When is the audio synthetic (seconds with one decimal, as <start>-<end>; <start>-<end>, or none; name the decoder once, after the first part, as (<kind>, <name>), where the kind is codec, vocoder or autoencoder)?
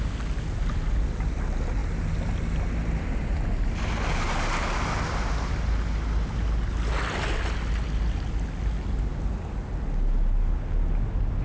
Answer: none